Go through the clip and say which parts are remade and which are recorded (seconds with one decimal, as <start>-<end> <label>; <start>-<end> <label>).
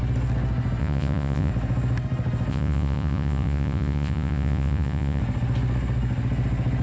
0.0-0.8 recorded; 0.8-1.5 remade; 1.5-2.5 recorded; 2.5-5.2 remade; 5.2-6.8 recorded